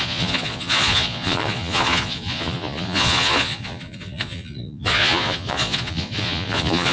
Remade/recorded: remade